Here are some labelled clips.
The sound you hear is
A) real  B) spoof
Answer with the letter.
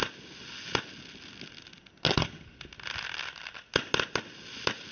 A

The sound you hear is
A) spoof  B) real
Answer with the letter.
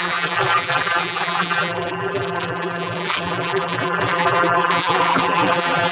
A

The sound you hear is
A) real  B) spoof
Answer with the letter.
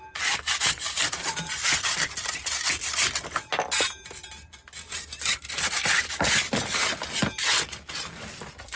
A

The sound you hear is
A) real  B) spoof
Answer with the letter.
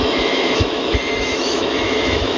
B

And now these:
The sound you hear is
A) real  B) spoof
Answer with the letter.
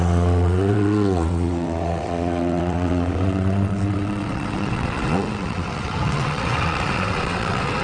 B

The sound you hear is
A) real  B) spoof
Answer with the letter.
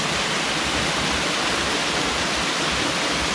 A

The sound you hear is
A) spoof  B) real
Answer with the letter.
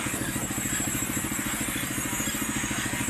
B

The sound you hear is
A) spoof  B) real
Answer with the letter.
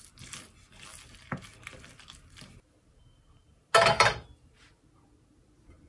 B